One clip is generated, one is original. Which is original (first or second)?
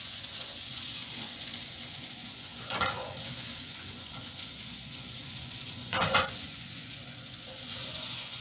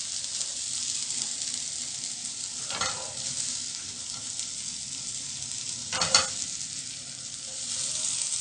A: second